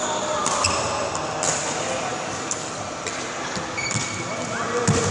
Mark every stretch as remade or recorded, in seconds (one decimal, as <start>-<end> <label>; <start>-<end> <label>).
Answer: 0.0-2.1 recorded; 2.1-2.7 remade; 2.7-5.1 recorded